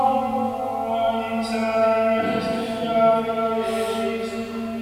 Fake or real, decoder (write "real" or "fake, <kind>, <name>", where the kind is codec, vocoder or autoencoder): real